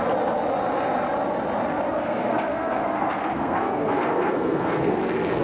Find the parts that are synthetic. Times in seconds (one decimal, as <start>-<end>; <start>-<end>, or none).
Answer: 2.0-5.4